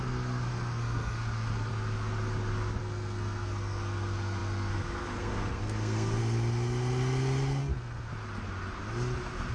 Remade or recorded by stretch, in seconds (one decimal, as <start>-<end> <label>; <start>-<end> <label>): 0.0-1.7 remade; 1.7-2.8 recorded; 2.8-6.2 remade; 6.2-7.6 recorded; 7.6-8.1 remade; 8.1-9.5 recorded